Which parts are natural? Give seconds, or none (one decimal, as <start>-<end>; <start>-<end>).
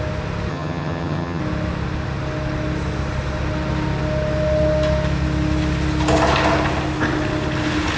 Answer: 0.0-0.5; 1.4-8.0